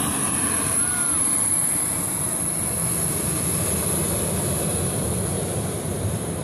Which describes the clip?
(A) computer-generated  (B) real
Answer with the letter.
B